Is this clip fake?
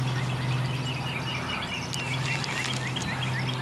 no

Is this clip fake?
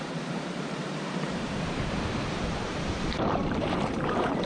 yes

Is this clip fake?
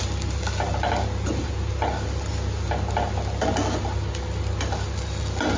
no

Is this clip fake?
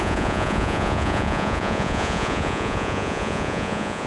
yes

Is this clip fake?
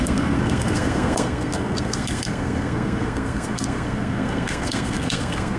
yes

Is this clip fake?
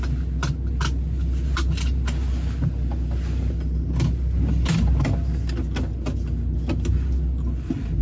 no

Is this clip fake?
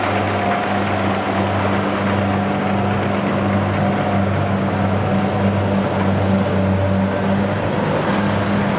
no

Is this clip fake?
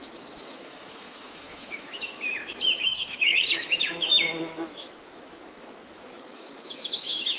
yes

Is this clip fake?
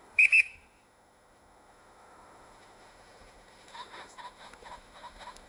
yes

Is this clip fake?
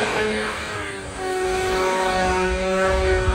yes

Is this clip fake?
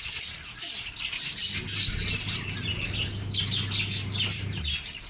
no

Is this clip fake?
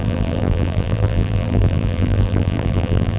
yes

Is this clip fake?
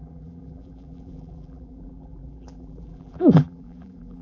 yes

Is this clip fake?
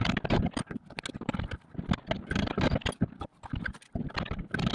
no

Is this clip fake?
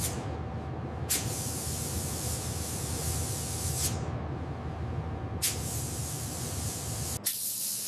no